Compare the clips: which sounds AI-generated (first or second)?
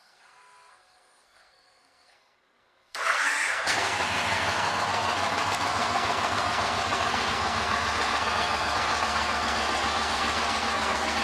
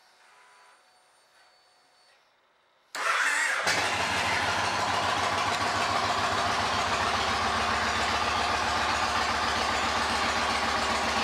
first